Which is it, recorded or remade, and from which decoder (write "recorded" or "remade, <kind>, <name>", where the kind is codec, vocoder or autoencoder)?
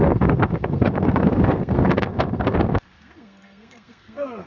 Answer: remade, codec, SNAC